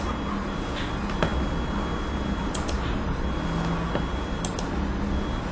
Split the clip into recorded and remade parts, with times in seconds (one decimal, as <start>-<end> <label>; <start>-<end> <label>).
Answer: 0.0-5.5 recorded